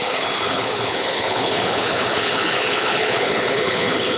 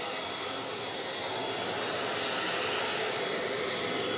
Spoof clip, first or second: first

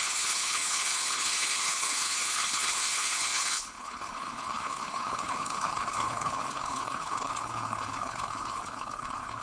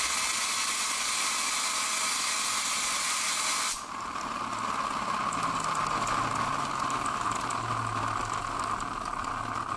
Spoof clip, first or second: first